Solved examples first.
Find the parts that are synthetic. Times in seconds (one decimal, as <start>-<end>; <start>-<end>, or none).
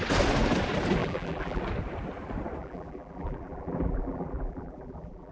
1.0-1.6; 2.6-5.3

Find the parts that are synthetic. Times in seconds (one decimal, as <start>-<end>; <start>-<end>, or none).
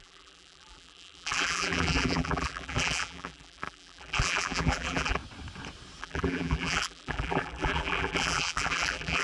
0.0-5.2; 6.0-9.2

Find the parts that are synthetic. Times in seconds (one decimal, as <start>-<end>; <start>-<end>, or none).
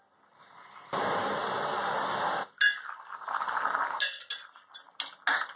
none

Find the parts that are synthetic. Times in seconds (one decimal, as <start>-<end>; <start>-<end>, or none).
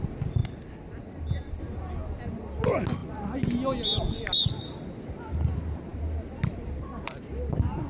none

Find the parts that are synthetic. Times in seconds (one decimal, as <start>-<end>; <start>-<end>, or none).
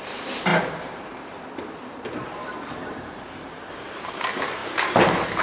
0.0-5.4